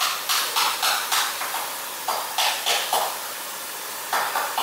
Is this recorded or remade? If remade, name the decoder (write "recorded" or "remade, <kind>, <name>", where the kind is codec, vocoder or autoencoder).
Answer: recorded